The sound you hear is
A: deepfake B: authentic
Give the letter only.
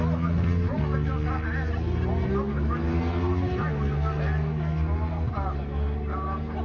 B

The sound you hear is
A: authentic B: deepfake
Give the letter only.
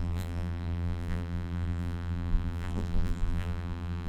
B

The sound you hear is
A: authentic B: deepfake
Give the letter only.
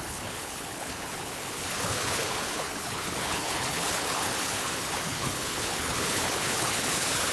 B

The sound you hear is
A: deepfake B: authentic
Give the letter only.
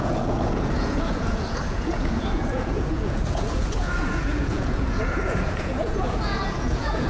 A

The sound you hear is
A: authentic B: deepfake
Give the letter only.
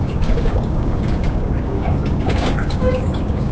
B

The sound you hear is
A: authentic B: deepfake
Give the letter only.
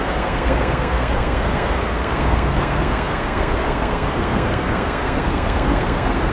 B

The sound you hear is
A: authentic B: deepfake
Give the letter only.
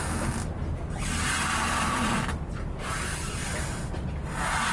A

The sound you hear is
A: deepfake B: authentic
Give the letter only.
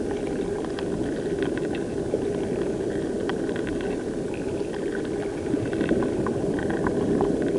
B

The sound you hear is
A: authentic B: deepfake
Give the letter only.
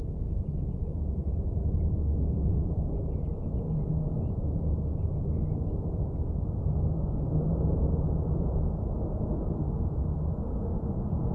B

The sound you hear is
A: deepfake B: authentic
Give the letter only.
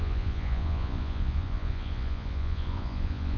A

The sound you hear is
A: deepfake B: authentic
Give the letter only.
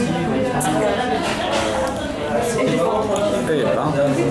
B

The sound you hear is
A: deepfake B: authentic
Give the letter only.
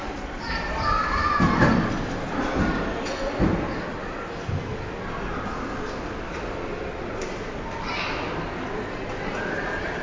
B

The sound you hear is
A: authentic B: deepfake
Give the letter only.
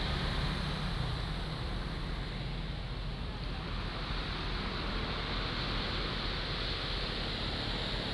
A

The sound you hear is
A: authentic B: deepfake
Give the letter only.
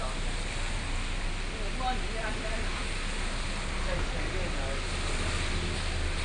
A